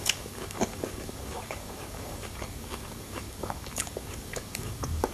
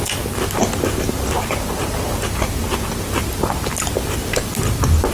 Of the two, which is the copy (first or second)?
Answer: first